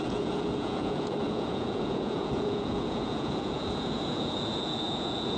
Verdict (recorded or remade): remade